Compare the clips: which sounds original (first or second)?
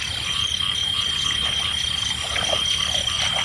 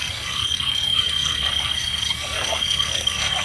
first